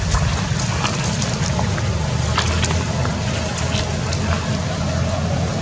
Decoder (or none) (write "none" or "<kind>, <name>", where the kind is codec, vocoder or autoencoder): none